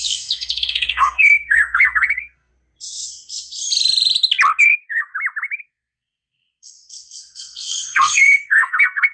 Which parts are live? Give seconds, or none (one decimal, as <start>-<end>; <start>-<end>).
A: 2.5-4.6; 5.1-5.6